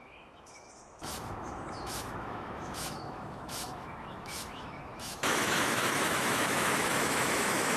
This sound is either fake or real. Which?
fake